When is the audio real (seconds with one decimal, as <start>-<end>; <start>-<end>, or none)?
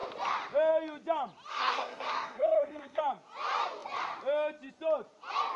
0.0-1.5; 3.0-5.6